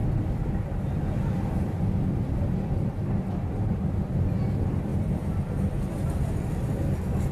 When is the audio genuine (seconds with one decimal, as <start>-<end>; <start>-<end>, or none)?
4.4-4.9; 5.9-7.3